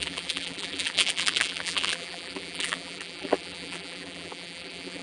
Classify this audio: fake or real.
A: fake